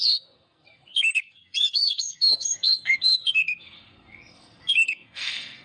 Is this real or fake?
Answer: fake